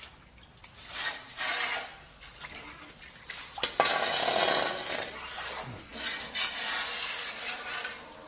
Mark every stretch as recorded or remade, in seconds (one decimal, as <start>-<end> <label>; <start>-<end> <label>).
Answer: 0.0-0.6 recorded; 0.6-1.4 remade; 1.4-8.3 recorded